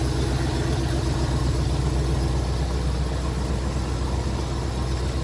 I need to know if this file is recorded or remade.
recorded